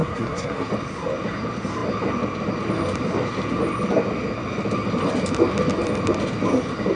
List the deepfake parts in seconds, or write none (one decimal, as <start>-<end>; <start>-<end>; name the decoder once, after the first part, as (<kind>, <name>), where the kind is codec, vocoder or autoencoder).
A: 0.0-0.7 (codec, SNAC)